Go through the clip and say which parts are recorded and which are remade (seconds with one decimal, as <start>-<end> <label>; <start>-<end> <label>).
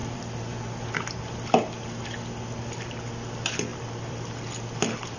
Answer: 0.0-0.9 remade; 0.9-3.7 recorded; 3.7-4.3 remade; 4.3-5.2 recorded